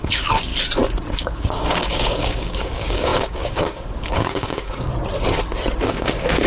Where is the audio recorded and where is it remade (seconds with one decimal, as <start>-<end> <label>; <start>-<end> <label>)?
0.0-0.5 remade; 0.5-1.2 recorded; 1.2-4.9 remade; 4.9-5.9 recorded; 5.9-6.5 remade